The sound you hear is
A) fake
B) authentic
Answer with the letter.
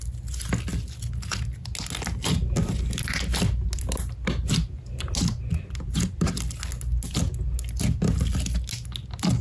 B